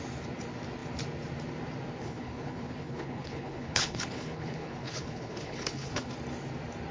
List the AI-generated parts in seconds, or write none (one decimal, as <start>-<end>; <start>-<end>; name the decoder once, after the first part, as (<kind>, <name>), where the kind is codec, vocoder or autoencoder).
2.0-6.1 (codec, HILCodec)